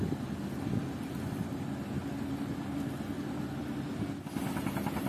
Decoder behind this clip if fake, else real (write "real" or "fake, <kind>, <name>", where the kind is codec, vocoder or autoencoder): real